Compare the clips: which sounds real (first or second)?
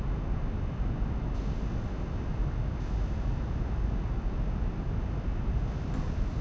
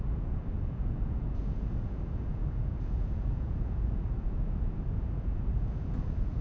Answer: first